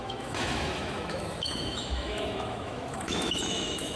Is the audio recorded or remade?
remade